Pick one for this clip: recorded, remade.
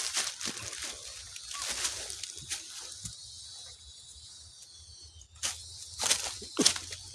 recorded